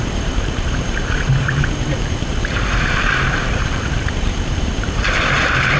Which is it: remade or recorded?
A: remade